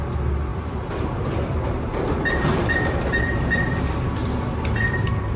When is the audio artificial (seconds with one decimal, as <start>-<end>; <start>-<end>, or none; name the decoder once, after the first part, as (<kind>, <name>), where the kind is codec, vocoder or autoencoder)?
0.5-3.7 (vocoder, BigVGAN v2)